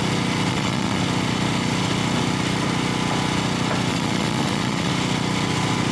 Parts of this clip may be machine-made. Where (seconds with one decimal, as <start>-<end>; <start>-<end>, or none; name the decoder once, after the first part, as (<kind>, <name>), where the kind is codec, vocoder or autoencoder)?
0.5-1.0 (vocoder, Vocos); 3.9-4.9